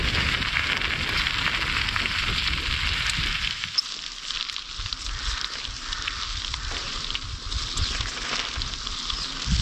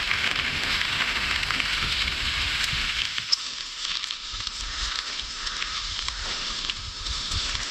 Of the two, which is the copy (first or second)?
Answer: second